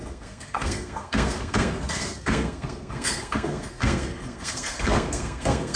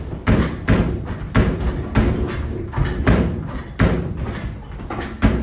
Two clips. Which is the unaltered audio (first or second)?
second